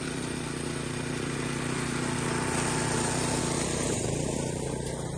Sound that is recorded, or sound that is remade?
recorded